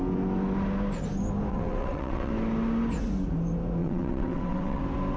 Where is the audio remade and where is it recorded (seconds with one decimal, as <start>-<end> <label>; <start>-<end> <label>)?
0.0-1.5 recorded; 1.5-2.3 remade; 2.3-3.8 recorded; 3.8-4.8 remade; 4.8-5.2 recorded